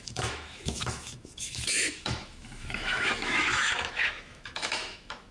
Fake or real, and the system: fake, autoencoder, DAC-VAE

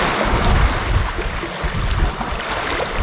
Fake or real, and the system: real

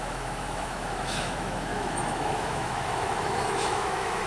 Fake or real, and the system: fake, autoencoder, DAC-VAE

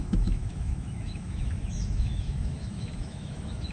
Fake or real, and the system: fake, autoencoder, DAC-VAE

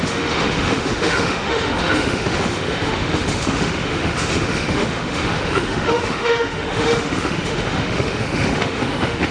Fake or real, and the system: fake, autoencoder, DAC-VAE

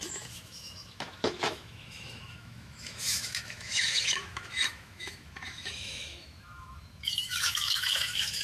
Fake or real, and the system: fake, autoencoder, DAC-VAE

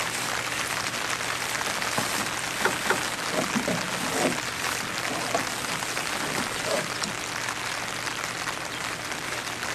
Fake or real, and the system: real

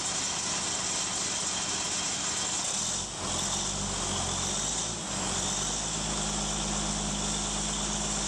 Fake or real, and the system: real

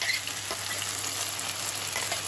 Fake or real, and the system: real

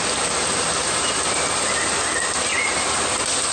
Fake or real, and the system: real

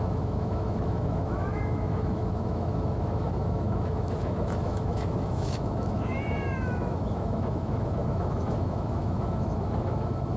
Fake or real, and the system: fake, autoencoder, DAC-VAE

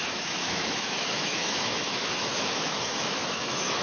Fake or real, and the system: fake, autoencoder, DAC-VAE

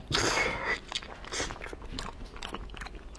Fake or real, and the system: real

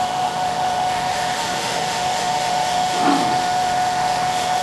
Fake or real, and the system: fake, autoencoder, DAC-VAE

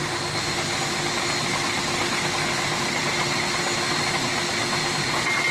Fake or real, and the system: real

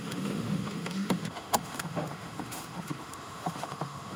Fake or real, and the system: fake, autoencoder, DAC-VAE